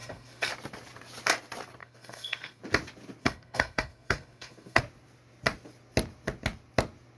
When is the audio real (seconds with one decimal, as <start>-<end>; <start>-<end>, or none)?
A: 0.5-1.8; 2.6-3.2; 4.8-7.2